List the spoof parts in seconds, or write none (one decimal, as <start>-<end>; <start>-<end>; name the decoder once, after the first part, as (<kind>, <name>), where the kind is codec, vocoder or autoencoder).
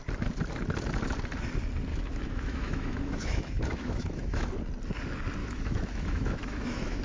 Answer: 1.9-4.5 (autoencoder, DAC-VAE); 5.4-7.0